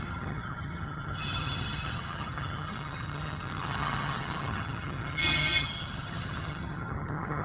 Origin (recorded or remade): remade